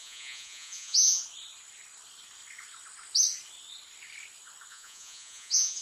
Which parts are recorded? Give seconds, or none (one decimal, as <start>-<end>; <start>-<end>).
1.2-4.7